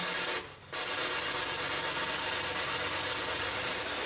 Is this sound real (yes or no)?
yes